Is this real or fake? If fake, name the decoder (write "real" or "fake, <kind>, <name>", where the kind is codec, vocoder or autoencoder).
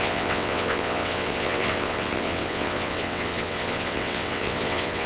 fake, vocoder, WaveNeXt